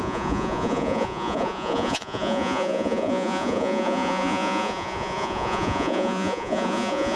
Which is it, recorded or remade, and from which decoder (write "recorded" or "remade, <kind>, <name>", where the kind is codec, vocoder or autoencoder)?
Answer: remade, vocoder, Vocos